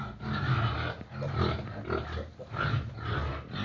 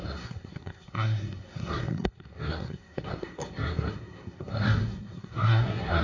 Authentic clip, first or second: first